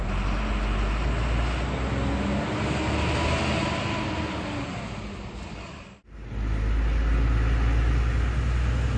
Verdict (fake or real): real